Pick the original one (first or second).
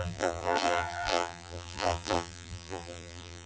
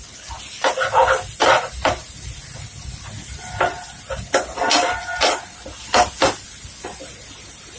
second